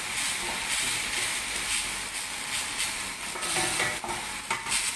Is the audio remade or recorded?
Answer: recorded